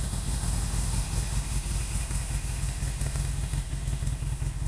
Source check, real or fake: fake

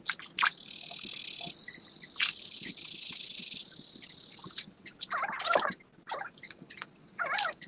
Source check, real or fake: real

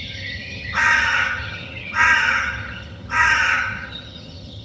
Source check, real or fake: fake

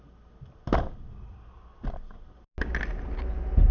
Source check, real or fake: real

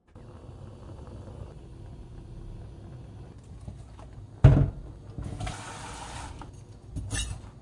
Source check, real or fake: real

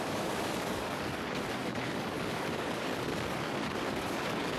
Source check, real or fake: fake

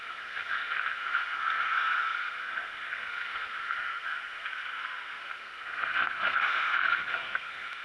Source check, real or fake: fake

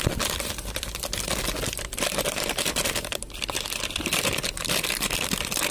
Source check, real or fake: fake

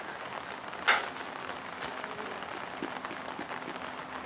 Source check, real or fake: real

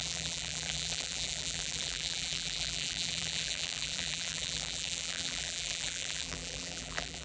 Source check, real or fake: fake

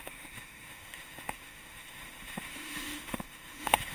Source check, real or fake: fake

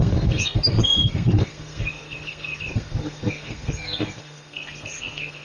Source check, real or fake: fake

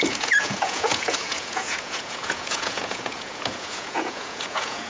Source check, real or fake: fake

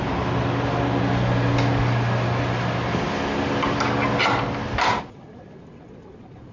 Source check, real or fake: real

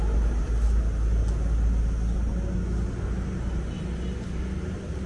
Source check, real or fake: real